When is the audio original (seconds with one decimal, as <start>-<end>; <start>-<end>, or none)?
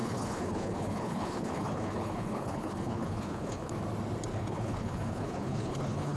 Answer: 3.7-4.3